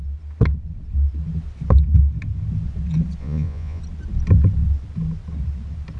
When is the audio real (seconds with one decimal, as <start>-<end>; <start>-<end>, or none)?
0.0-3.2; 3.8-6.0